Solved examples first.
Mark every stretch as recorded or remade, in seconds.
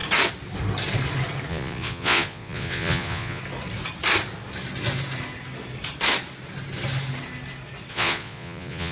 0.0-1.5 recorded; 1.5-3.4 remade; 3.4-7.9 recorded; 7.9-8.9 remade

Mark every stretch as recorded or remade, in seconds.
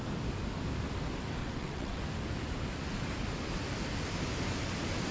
0.0-1.4 recorded; 1.4-2.0 remade; 2.0-5.1 recorded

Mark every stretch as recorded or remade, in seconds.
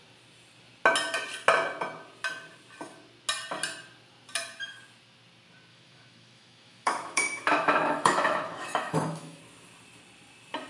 0.0-5.7 recorded; 5.7-9.4 remade; 9.4-10.7 recorded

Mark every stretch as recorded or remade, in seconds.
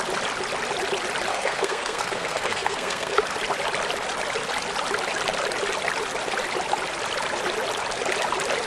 0.0-1.3 recorded; 1.3-3.2 remade; 3.2-8.7 recorded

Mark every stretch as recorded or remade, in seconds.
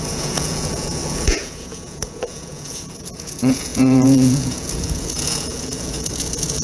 0.0-6.6 remade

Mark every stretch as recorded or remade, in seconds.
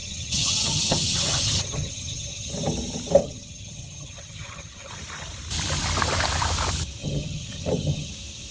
0.0-2.5 remade; 2.5-3.2 recorded; 3.2-4.9 remade; 4.9-7.0 recorded; 7.0-8.1 remade; 8.1-8.5 recorded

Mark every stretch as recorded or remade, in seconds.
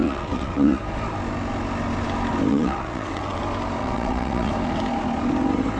0.0-0.8 remade; 0.8-2.5 recorded; 2.5-3.4 remade; 3.4-3.8 recorded; 3.8-4.5 remade; 4.5-5.8 recorded